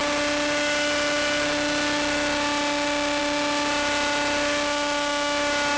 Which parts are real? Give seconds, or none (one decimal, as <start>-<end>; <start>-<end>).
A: 0.0-5.8